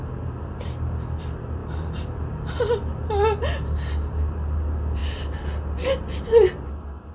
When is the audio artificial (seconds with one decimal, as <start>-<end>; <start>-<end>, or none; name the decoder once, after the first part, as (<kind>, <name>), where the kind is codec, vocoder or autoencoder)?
none